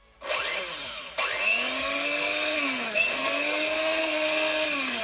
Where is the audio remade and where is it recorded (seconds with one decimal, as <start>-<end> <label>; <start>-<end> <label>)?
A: 0.0-1.8 recorded; 1.8-5.0 remade